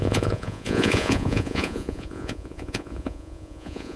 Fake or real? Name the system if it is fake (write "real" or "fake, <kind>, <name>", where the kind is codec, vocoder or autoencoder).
fake, vocoder, Vocos